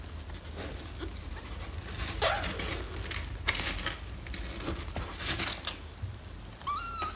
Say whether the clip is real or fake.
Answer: real